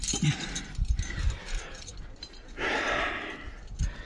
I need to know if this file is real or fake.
real